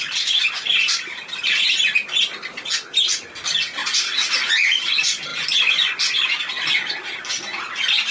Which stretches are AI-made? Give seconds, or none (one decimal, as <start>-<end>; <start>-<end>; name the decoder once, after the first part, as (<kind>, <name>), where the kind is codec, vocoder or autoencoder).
3.8-4.3 (vocoder, WaveNeXt)